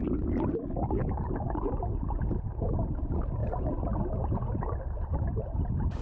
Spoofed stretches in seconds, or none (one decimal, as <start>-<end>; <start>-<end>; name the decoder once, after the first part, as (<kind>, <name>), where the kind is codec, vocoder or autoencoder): none

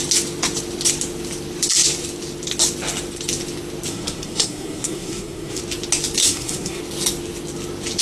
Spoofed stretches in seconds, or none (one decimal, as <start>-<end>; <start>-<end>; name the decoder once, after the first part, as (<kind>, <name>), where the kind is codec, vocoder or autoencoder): 3.9-5.6 (codec, SNAC); 6.2-6.8